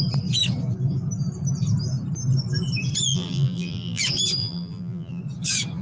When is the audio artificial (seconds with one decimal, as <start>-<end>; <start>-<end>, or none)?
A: 3.1-4.0; 4.4-5.2